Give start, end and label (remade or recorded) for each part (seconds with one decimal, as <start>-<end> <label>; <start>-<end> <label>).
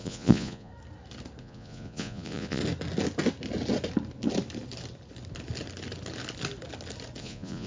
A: 0.0-0.7 remade; 0.7-1.4 recorded; 1.4-2.6 remade; 2.6-7.2 recorded; 7.2-7.7 remade